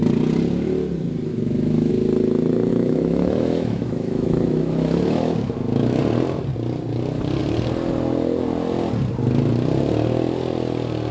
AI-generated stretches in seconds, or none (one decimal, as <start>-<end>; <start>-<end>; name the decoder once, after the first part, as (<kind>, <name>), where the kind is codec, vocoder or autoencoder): 1.3-1.9 (autoencoder, DAC-VAE); 2.7-6.0